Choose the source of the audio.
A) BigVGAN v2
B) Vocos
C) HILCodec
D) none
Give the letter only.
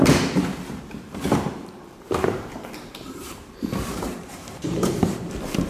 A